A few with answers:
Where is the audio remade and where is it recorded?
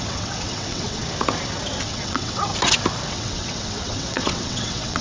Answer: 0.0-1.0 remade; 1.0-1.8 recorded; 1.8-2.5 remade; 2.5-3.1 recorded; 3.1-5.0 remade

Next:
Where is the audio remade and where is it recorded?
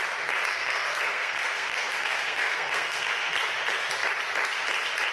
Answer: 0.0-0.5 recorded; 0.5-3.3 remade; 3.3-5.1 recorded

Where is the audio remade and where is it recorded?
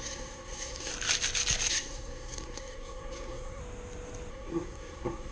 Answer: 0.0-0.9 remade; 0.9-1.7 recorded; 1.7-3.6 remade; 3.6-4.3 recorded; 4.3-5.3 remade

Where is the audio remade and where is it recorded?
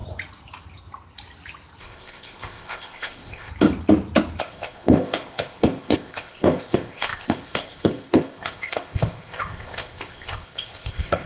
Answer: 0.0-1.8 recorded; 1.8-3.5 remade; 3.5-4.4 recorded; 4.4-11.3 remade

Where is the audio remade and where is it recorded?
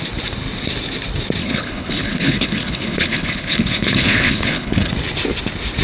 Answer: 0.0-1.4 recorded; 1.4-4.9 remade; 4.9-5.8 recorded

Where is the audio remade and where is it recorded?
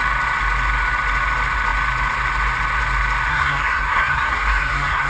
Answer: 0.0-3.3 recorded; 3.3-5.1 remade